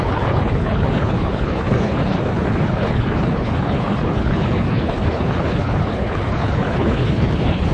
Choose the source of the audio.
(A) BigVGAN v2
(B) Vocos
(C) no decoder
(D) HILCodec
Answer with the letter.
D